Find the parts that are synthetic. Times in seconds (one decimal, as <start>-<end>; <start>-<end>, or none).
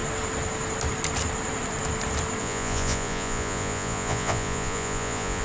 2.4-5.4